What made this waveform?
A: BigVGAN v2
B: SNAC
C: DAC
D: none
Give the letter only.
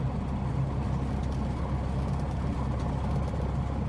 D